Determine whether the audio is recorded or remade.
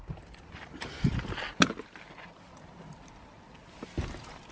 recorded